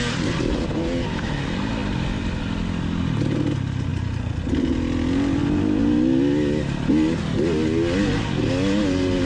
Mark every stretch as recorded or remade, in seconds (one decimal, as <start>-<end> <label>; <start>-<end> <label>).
0.0-9.3 recorded